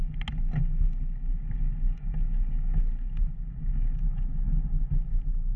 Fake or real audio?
real